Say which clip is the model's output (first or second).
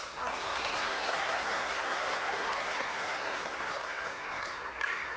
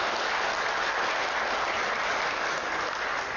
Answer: first